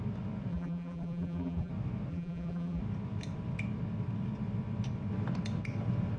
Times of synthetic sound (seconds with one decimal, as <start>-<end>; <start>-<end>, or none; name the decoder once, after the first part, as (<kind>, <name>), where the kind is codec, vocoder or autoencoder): 0.5-1.7 (vocoder, BigVGAN v2); 2.1-2.8